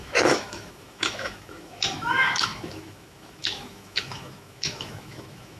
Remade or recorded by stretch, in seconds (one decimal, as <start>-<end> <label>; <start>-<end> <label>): 0.0-5.6 remade